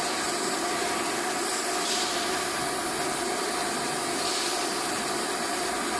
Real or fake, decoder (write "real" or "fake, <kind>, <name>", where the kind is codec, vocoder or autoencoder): real